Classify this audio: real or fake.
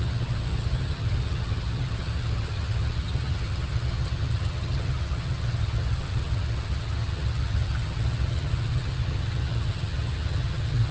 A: fake